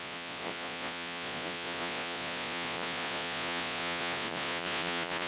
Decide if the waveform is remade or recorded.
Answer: remade